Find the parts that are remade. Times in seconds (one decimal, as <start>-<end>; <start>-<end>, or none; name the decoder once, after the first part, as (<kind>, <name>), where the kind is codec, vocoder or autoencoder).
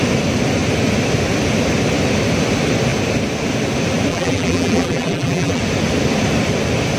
4.1-5.6 (vocoder, BigVGAN v2)